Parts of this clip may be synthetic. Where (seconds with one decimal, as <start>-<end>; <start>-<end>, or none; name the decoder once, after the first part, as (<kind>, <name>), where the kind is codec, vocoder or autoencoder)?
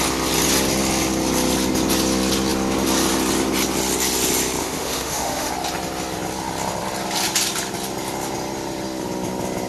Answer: 4.6-5.5 (autoencoder, DAC-VAE)